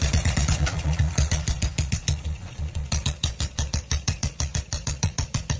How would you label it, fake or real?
fake